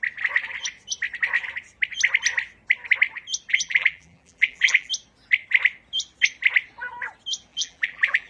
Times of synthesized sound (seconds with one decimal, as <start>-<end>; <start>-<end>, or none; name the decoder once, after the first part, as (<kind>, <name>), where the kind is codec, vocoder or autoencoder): 3.5-4.9 (vocoder, BigVGAN v2); 7.5-8.3